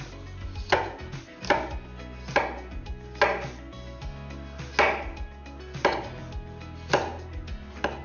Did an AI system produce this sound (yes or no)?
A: no